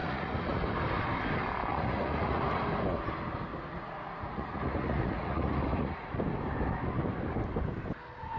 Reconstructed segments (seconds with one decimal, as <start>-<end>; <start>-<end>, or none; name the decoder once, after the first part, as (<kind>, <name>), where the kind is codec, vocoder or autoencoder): 0.0-0.6 (vocoder, Vocos); 1.7-2.6; 3.5-6.2